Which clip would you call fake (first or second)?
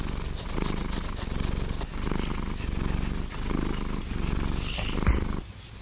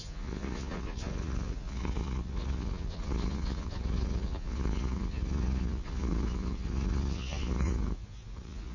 second